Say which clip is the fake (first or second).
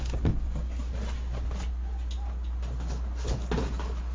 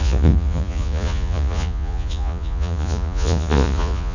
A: second